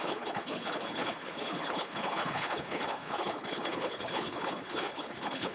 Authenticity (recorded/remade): remade